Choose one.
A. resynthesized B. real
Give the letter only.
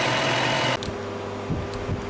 B